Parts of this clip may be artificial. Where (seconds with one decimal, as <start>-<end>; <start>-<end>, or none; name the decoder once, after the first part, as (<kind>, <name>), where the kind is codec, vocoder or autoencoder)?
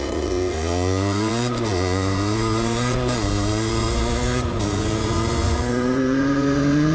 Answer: 0.0-6.9 (vocoder, Vocos)